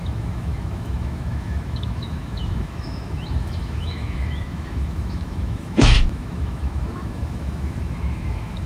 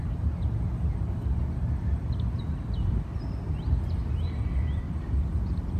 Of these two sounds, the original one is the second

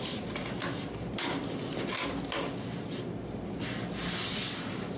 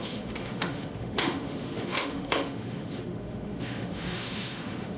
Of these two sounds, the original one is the first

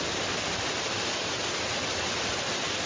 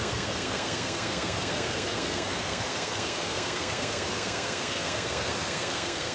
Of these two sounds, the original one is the first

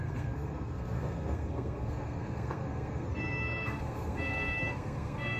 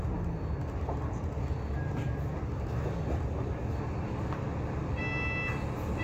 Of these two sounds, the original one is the second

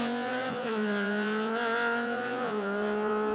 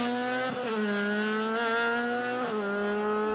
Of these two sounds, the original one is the second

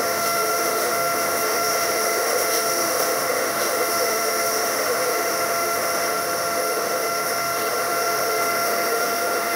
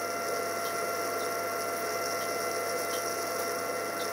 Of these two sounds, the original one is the second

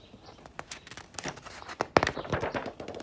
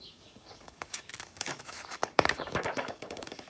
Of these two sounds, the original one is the first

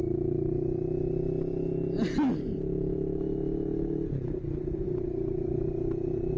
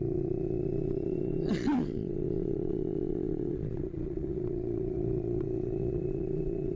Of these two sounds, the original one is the first